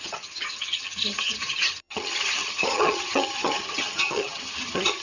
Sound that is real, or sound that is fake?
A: fake